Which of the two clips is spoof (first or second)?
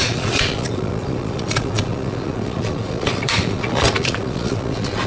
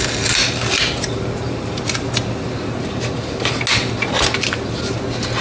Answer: first